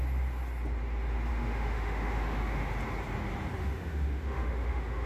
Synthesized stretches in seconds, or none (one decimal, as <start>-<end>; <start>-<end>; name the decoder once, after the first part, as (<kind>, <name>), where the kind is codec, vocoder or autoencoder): 1.3-2.7 (autoencoder, DAC-VAE); 3.6-5.1